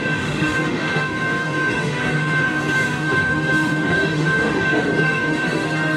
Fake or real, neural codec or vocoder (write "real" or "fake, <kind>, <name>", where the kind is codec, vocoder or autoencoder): fake, autoencoder, DAC-VAE